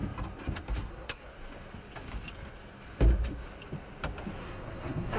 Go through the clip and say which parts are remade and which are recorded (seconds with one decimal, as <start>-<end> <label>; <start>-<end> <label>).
0.0-0.9 recorded; 0.9-1.3 remade; 1.3-4.4 recorded; 4.4-5.2 remade